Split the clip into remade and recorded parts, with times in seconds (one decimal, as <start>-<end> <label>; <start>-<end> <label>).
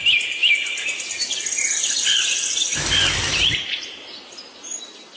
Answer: 0.0-5.2 recorded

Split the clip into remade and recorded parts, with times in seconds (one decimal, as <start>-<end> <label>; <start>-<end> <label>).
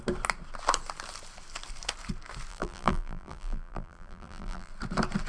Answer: 0.0-2.5 recorded; 2.5-4.7 remade; 4.7-5.3 recorded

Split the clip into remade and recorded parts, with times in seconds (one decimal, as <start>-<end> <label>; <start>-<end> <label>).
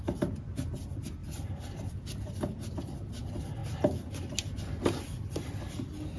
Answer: 0.0-1.2 recorded; 1.2-1.9 remade; 1.9-6.2 recorded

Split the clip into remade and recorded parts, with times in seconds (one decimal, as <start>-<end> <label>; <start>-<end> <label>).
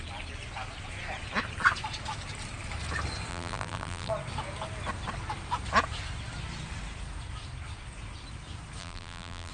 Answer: 0.0-3.3 recorded; 3.3-4.1 remade; 4.1-8.8 recorded; 8.8-9.5 remade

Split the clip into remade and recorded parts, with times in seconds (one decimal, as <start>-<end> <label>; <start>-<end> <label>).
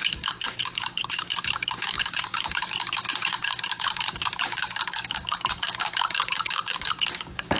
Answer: 0.0-7.6 remade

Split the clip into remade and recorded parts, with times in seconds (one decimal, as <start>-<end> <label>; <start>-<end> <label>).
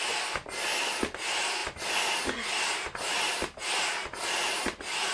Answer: 0.0-5.1 recorded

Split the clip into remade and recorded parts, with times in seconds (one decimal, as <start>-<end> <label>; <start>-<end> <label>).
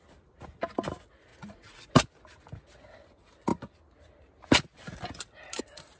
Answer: 0.0-1.3 recorded; 1.3-1.9 remade; 1.9-6.0 recorded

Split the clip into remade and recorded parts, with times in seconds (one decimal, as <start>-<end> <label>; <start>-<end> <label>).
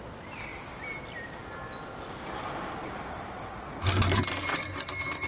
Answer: 0.0-5.3 recorded